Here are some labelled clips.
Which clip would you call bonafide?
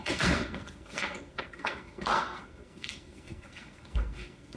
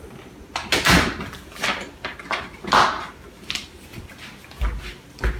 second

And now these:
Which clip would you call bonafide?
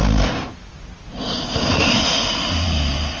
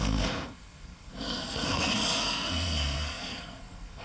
first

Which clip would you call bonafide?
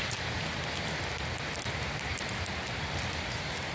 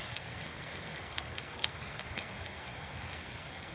first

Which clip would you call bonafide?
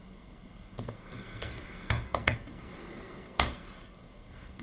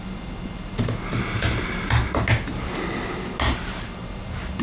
second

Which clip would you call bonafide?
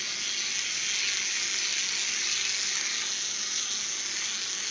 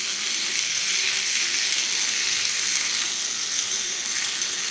first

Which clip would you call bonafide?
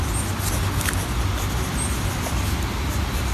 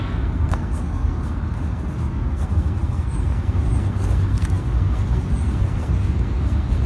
first